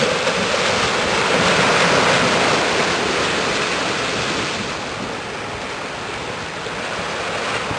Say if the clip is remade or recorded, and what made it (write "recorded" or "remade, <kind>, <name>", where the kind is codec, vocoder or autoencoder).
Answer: recorded